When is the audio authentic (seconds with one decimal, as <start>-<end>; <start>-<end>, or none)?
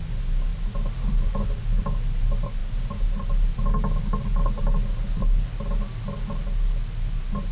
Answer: 0.0-7.5